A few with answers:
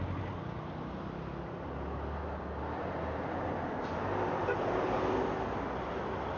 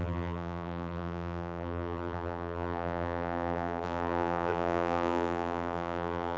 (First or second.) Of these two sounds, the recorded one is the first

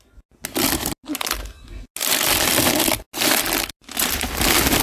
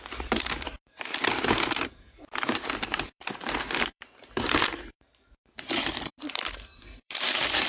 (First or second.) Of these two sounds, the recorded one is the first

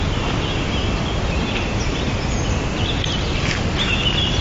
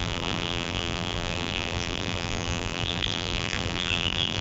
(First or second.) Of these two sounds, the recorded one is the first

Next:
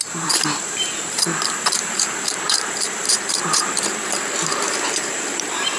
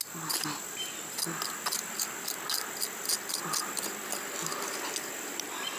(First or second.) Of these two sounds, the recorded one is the second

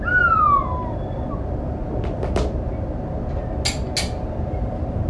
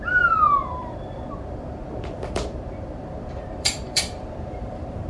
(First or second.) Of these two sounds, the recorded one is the first